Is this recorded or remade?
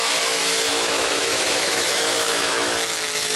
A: remade